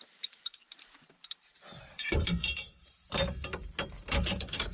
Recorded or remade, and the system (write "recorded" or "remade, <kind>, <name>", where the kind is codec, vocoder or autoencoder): remade, vocoder, BigVGAN v2